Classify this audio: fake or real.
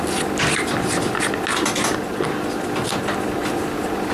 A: real